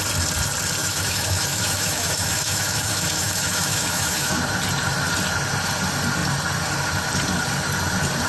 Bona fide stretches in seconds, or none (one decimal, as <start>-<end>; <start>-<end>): 0.0-0.8; 4.4-8.3